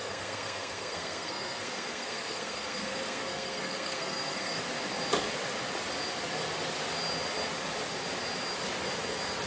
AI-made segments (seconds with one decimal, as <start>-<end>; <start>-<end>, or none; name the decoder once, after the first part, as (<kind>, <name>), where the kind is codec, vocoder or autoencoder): 0.0-4.6 (codec, SNAC)